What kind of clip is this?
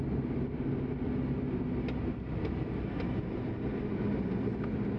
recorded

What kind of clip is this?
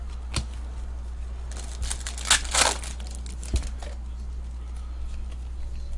recorded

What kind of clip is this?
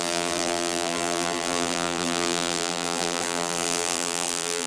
remade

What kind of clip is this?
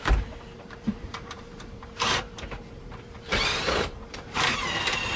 remade